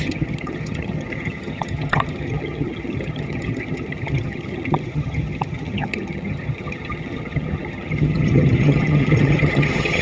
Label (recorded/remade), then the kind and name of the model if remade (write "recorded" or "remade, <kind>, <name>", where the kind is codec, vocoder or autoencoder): remade, vocoder, HiFi-GAN